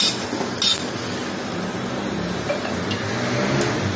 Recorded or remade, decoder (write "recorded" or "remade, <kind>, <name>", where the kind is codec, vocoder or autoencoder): recorded